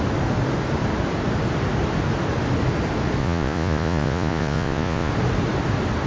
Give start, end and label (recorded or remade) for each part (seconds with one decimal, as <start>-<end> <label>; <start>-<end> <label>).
0.0-3.2 recorded; 3.2-5.1 remade; 5.1-6.1 recorded